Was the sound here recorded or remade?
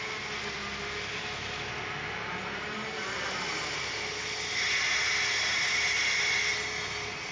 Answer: recorded